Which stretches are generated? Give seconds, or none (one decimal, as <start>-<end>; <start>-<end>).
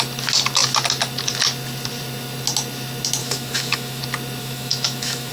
3.2-4.0; 4.4-5.3